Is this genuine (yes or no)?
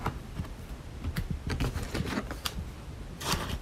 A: no